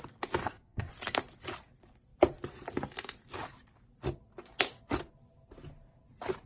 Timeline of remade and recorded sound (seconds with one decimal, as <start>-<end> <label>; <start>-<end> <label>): 0.0-0.4 recorded; 0.4-0.9 remade; 0.9-6.5 recorded